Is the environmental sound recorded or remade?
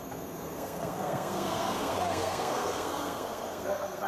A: remade